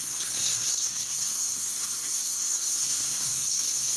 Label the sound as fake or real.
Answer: fake